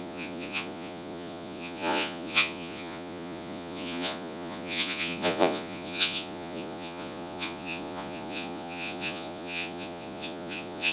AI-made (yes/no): yes